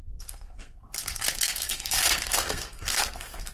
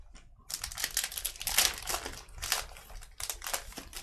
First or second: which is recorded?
second